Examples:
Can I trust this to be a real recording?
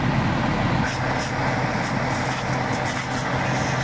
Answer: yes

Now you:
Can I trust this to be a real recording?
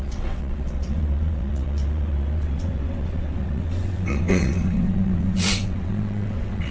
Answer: no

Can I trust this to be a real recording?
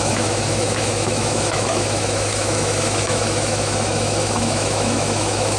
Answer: no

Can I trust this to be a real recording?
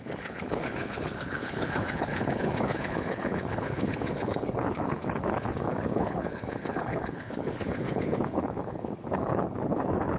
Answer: no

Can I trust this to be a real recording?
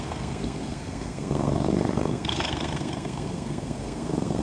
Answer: no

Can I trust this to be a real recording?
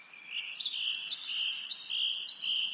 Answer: yes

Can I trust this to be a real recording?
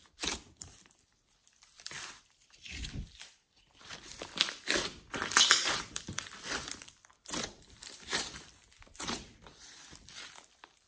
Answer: no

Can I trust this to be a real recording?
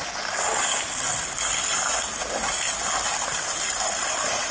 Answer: yes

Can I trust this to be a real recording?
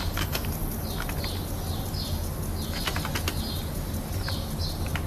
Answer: yes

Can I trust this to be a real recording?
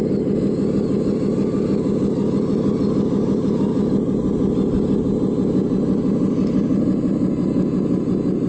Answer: yes